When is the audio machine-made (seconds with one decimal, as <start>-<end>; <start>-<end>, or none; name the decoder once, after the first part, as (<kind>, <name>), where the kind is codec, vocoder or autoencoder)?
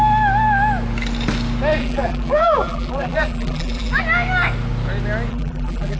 1.8-4.0 (vocoder, BigVGAN v2); 5.3-6.0